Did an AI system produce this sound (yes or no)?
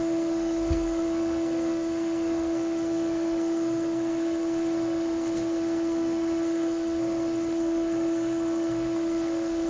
yes